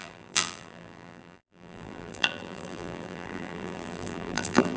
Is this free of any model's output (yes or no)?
no